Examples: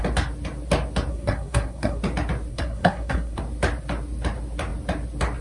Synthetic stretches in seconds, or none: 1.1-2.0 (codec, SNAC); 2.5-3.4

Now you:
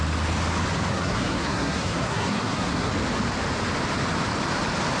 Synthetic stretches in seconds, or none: 0.9-2.9 (codec, SNAC)

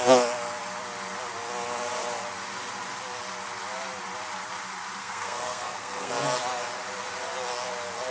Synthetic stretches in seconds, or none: 5.0-6.1 (codec, SNAC)

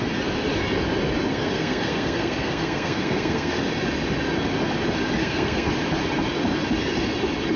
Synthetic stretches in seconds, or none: 1.3-3.6 (codec, SNAC); 5.2-5.7

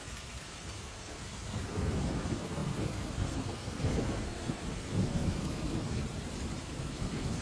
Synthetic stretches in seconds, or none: 0.0-6.0 (codec, SNAC); 6.6-7.4